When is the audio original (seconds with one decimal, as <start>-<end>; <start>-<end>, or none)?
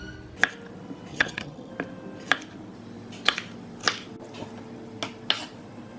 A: 0.0-1.1; 1.7-6.0